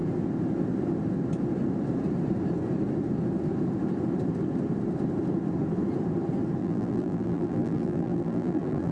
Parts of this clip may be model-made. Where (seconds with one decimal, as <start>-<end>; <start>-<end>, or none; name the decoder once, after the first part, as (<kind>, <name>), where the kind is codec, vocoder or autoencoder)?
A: 6.6-8.9 (vocoder, BigVGAN v2)